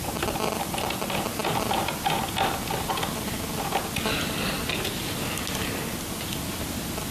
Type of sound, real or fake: real